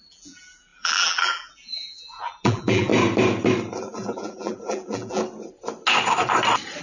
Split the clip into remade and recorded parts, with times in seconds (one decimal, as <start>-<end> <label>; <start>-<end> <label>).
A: 0.0-2.9 remade; 2.9-3.8 recorded; 3.8-5.2 remade; 5.2-6.8 recorded